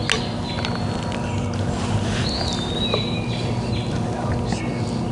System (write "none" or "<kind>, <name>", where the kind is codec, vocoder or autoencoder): none